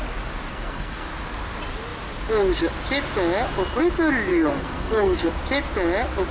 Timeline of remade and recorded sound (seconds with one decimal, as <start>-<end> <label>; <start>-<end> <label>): 0.0-0.5 recorded; 0.5-1.1 remade; 1.1-4.3 recorded; 4.3-5.3 remade; 5.3-6.3 recorded